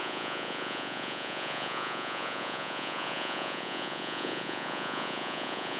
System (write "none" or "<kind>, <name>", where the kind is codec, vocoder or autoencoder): vocoder, Vocos